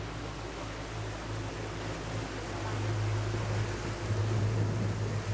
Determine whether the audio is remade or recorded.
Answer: recorded